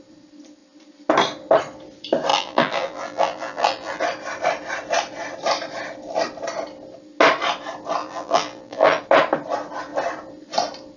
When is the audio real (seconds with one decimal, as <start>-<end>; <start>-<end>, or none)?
0.0-2.3; 4.0-8.0; 9.0-11.0